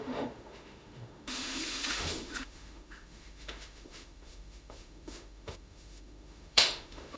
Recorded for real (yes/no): no